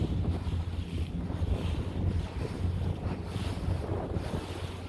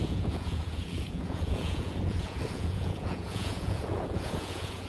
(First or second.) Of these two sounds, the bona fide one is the first